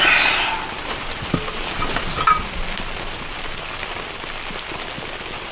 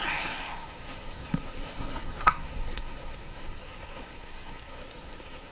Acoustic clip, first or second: first